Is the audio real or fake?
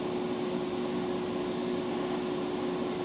real